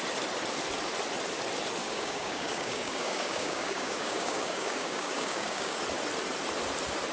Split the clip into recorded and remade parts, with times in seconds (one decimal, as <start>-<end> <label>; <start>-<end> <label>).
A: 0.0-1.8 recorded; 1.8-5.8 remade; 5.8-7.1 recorded